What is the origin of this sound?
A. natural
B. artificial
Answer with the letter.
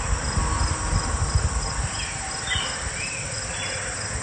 A